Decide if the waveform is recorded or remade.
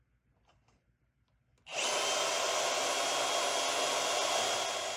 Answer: recorded